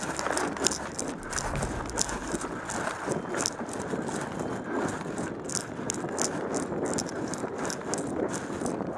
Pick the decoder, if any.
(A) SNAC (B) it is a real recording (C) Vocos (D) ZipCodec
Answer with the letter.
B